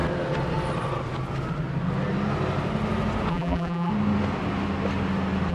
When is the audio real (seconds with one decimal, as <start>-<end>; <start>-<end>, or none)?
0.0-3.3; 3.9-5.5